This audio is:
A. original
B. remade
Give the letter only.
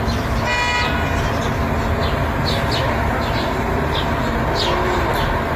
A